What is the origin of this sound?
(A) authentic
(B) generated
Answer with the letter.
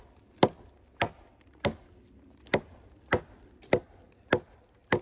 A